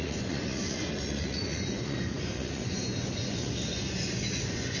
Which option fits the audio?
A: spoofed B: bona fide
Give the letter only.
A